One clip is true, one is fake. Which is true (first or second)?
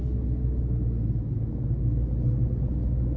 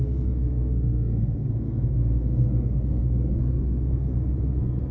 first